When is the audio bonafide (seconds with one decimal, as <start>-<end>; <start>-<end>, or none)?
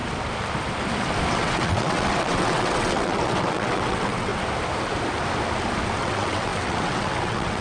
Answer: 0.0-1.3; 4.3-6.0